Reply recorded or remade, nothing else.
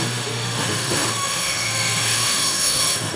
remade